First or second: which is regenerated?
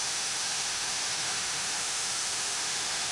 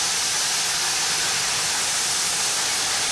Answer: first